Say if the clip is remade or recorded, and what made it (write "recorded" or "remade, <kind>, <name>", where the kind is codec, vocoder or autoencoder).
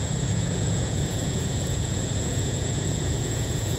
remade, vocoder, Vocos